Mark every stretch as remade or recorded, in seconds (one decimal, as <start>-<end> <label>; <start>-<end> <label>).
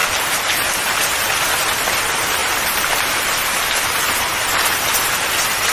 0.0-1.2 remade; 1.2-2.4 recorded; 2.4-4.3 remade; 4.3-5.7 recorded